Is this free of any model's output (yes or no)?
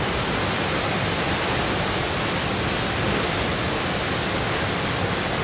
yes